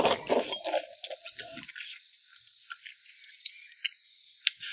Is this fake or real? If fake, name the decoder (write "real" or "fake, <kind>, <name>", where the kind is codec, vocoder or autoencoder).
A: real